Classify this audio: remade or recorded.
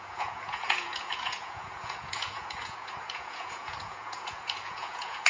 remade